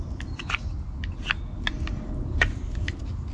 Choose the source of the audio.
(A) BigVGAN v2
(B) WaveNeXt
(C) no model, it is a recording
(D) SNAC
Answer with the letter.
C